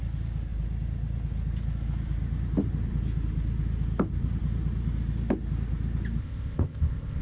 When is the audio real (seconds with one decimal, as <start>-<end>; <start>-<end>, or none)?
0.0-6.2